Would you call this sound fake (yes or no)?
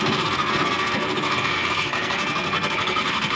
yes